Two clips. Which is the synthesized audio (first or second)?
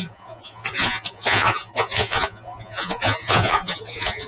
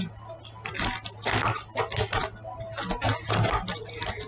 first